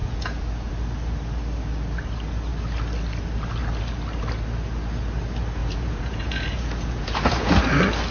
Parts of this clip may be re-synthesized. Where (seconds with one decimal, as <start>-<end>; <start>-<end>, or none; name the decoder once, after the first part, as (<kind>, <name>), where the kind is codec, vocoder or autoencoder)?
0.0-0.7 (vocoder, Vocos); 5.6-7.5